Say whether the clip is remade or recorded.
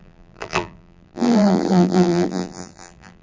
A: remade